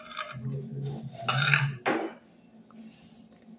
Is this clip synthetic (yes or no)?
no